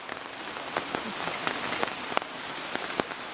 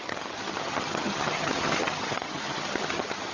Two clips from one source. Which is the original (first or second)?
first